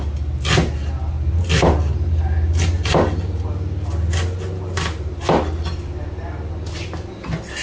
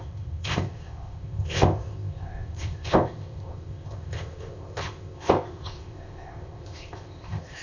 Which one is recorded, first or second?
first